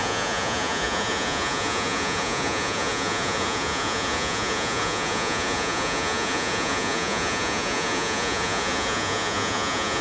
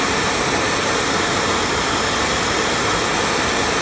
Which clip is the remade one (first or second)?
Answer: first